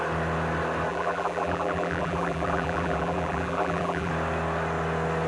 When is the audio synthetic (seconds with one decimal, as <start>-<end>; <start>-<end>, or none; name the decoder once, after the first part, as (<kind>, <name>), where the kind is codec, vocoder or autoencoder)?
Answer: 0.9-4.1 (vocoder, BigVGAN v2)